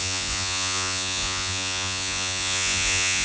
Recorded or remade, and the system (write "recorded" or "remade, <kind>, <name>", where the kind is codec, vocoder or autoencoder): remade, vocoder, Vocos